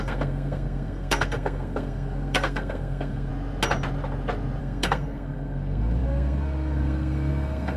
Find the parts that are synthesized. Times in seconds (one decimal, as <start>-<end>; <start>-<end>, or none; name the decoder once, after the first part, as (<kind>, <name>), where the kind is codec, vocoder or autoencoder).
0.0-3.3 (codec, SNAC); 4.6-7.8